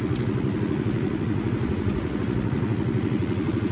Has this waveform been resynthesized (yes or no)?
yes